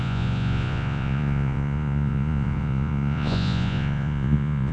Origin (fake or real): fake